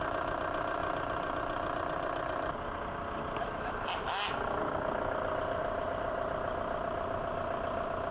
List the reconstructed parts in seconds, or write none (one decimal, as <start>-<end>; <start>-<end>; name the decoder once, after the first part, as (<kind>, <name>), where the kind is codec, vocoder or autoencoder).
none